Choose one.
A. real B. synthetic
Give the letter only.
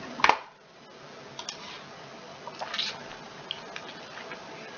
A